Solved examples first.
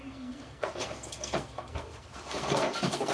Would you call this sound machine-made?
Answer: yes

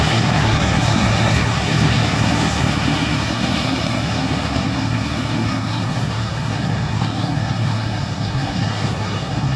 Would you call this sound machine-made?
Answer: yes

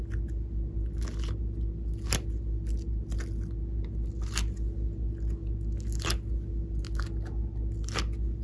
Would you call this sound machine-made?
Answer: no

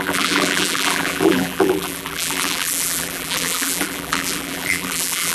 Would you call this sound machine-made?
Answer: yes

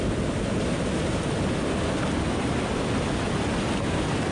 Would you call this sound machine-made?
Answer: no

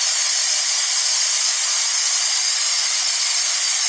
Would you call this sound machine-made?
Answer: yes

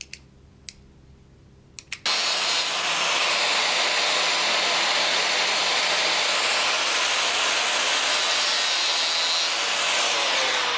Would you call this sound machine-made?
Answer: no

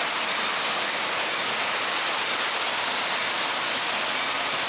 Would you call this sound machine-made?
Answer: no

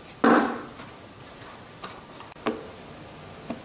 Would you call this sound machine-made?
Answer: no